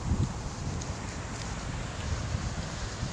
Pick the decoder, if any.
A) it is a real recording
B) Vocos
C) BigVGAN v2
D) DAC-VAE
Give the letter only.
A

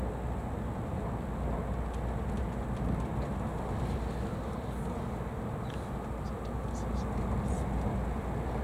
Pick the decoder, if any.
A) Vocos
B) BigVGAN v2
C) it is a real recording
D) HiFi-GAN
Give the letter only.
C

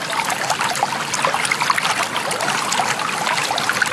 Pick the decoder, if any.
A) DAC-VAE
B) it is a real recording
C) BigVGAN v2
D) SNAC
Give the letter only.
B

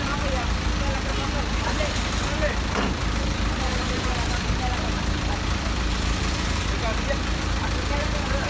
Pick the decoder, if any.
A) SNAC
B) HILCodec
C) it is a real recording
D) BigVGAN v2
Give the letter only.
D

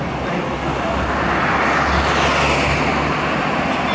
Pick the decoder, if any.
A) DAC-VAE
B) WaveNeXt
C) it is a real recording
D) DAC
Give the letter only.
C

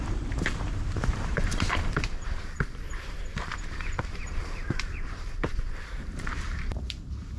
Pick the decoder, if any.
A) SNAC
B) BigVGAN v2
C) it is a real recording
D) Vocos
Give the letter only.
B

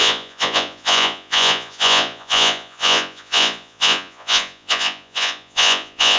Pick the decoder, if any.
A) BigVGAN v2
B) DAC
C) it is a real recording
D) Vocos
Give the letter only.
D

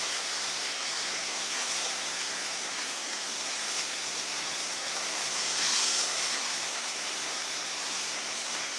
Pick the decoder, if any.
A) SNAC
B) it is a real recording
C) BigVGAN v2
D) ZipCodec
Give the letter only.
A